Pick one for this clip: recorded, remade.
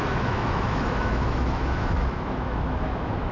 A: remade